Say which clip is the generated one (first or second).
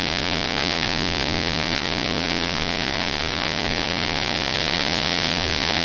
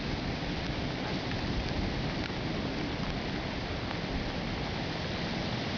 first